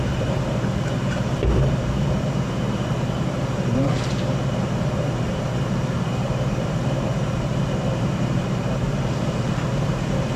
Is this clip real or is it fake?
fake